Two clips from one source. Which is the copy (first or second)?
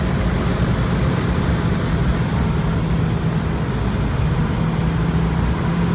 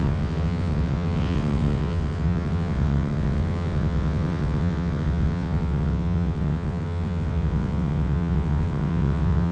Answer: second